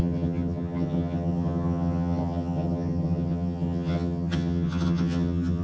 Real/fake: fake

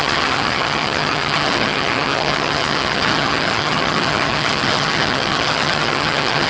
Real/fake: fake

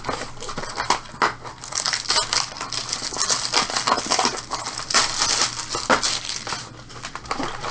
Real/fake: real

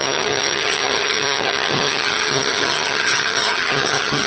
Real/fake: fake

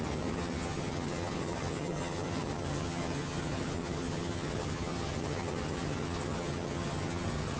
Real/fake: fake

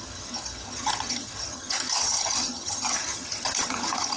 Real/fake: fake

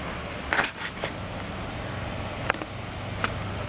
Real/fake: real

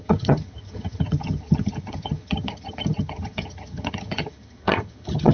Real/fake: fake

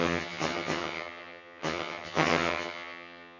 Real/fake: fake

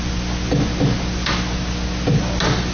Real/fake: real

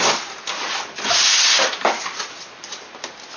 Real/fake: real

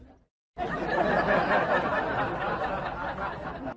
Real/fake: real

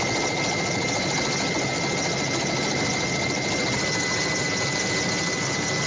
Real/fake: real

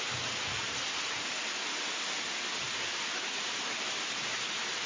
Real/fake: real